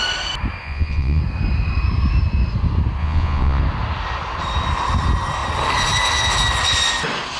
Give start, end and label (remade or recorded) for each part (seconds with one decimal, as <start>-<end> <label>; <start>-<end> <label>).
0.0-0.6 recorded; 0.6-1.2 remade; 1.2-3.0 recorded; 3.0-3.6 remade; 3.6-7.4 recorded